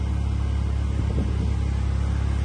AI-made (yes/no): no